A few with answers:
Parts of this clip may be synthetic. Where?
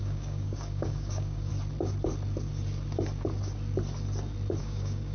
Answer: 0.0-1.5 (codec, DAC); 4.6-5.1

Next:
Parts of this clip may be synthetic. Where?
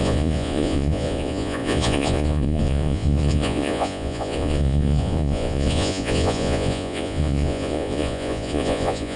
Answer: 0.0-9.2 (vocoder, Vocos)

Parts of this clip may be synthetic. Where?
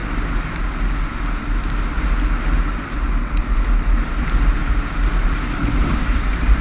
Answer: 3.4-6.6 (vocoder, BigVGAN v2)